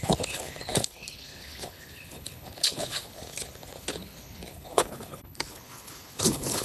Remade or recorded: remade